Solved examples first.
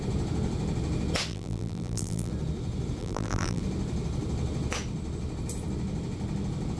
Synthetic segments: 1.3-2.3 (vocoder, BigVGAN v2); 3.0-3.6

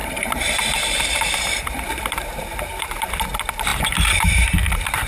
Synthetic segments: 0.0-3.1 (vocoder, BigVGAN v2); 3.7-4.5

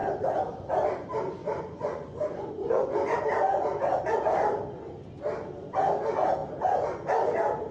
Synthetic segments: 1.4-3.2 (vocoder, Vocos)